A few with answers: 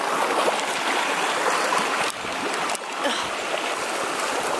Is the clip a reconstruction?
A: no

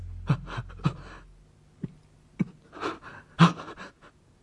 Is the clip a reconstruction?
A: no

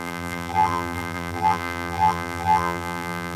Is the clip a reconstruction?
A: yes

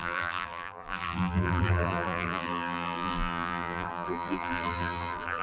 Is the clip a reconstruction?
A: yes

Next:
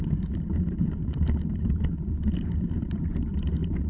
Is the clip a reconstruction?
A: yes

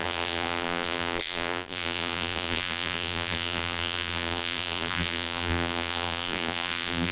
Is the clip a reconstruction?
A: yes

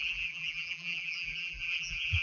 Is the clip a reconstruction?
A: yes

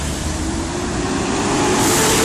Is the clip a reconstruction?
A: yes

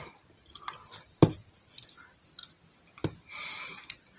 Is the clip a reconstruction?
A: no